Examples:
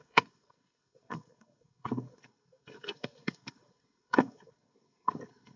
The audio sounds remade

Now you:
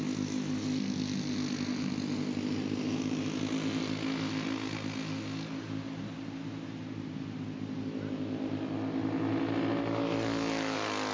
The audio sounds recorded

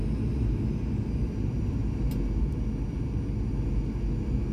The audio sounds recorded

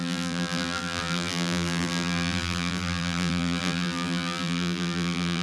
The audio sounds remade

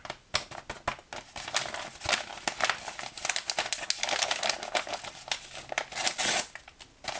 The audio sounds recorded